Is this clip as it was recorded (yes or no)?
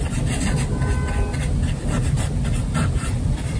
yes